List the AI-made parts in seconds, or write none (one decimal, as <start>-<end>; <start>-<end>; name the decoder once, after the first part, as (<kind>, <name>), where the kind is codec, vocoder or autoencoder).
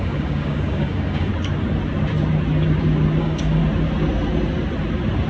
0.0-1.3 (codec, DAC); 3.2-3.6